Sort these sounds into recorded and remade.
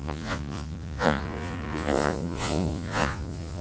remade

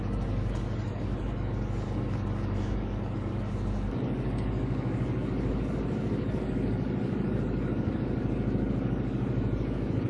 remade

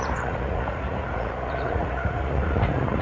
remade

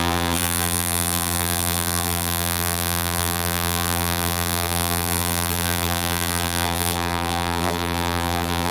remade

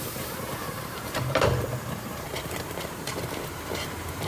remade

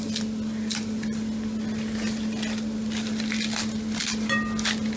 recorded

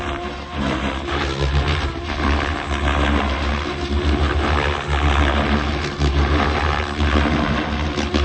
recorded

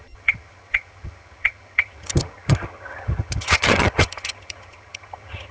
remade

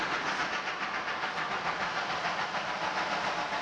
recorded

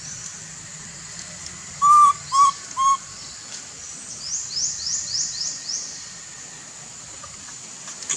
recorded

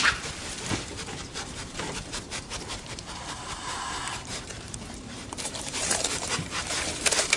remade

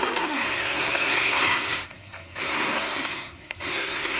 remade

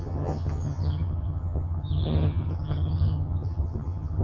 remade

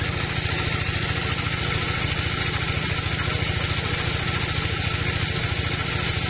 recorded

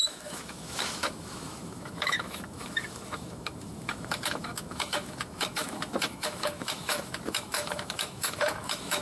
remade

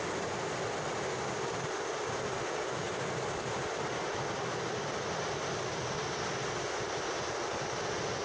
recorded